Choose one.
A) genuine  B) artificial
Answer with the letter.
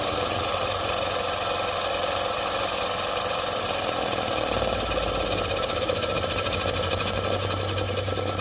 A